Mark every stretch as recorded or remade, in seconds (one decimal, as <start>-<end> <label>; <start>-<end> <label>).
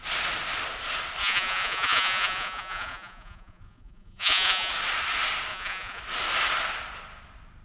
0.0-1.2 recorded; 1.2-4.7 remade; 4.7-5.5 recorded; 5.5-6.0 remade; 6.0-7.6 recorded